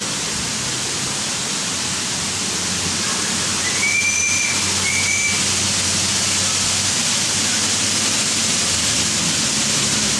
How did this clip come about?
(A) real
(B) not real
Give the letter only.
A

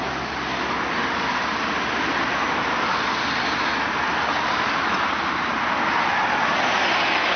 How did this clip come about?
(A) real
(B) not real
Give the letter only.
A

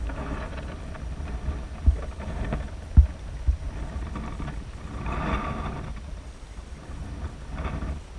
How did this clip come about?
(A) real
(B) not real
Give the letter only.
A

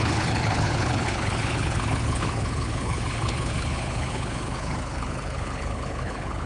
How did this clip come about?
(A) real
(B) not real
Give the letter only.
B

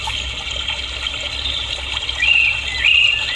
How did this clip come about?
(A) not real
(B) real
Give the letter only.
B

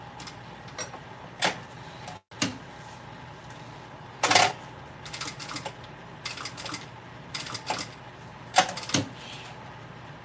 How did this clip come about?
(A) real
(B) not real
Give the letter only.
A